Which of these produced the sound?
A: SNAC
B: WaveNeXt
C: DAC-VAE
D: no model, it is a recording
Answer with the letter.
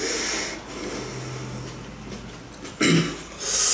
D